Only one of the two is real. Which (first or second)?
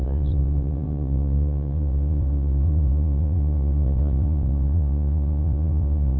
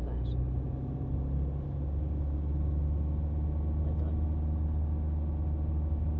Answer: second